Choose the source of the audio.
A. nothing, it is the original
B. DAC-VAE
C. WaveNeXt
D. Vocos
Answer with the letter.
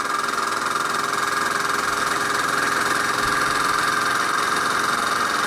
A